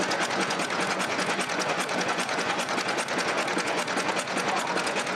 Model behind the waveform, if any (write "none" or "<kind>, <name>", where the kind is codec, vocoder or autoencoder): vocoder, Vocos